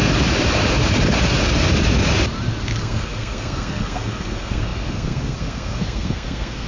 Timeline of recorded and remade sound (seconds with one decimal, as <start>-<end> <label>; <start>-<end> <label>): 0.0-2.8 recorded; 2.8-6.7 remade